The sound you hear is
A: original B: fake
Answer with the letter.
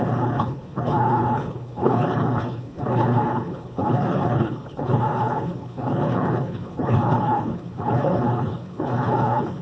B